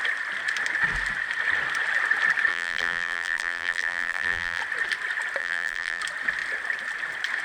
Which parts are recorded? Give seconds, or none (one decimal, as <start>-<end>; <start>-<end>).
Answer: 0.0-2.5; 4.6-5.4; 6.0-7.4